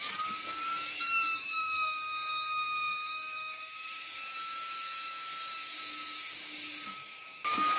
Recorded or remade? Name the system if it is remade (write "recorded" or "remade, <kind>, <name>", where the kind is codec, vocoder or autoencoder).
remade, codec, DAC